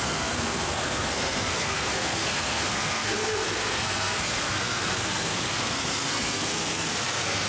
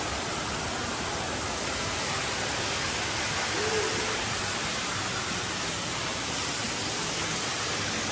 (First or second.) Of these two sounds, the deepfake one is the first